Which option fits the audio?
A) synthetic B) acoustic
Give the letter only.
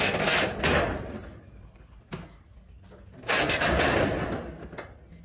B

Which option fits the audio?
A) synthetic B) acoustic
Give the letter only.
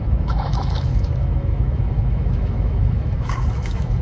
A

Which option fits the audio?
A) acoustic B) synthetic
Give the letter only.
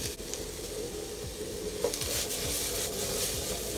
A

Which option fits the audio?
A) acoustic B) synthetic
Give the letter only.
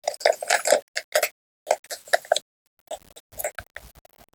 A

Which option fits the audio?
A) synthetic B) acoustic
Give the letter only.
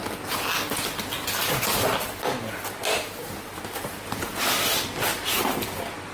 B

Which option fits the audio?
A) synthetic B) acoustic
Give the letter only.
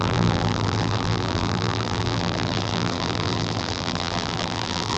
A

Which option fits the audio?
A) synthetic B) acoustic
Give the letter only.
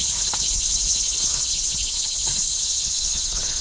A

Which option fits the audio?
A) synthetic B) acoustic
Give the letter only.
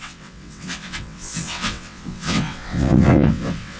A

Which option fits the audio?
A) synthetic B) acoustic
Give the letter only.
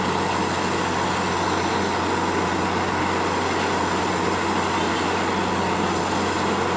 B